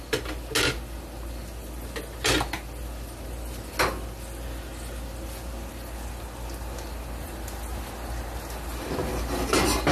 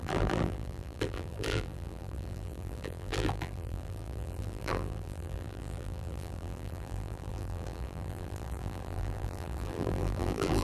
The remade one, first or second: second